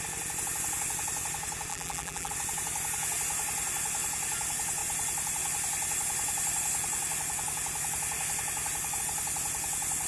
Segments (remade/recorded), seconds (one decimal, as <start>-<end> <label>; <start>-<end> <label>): 0.0-1.7 recorded; 1.7-2.3 remade; 2.3-10.1 recorded